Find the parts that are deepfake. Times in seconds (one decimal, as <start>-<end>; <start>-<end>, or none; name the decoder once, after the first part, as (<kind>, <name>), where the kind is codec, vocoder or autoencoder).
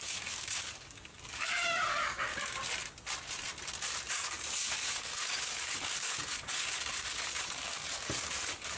0.0-2.3 (codec, DAC); 4.1-8.8